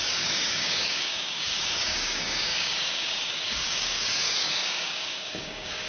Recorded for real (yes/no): no